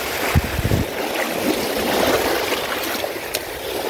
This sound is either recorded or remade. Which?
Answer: recorded